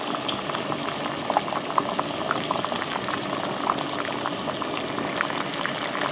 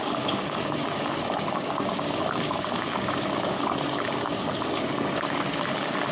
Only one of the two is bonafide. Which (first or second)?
first